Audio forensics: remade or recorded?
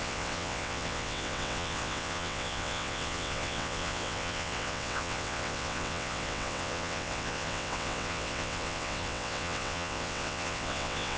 remade